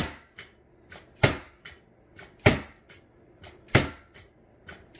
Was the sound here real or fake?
fake